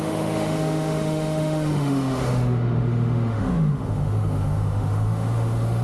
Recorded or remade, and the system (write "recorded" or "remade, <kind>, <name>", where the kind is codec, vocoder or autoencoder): remade, autoencoder, DAC-VAE